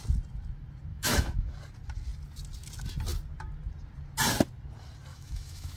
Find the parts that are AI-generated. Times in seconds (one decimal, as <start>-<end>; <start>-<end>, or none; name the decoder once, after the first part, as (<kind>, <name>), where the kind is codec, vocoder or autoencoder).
0.9-1.5 (autoencoder, DAC-VAE); 5.1-5.8